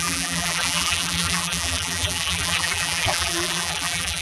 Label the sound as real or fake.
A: fake